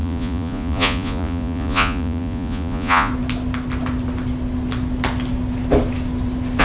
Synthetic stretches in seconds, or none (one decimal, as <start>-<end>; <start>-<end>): 0.0-3.1